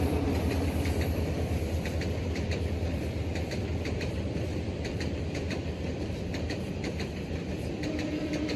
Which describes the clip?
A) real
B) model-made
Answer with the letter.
B